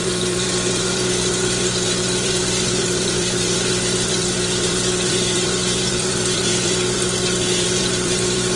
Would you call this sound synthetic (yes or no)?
yes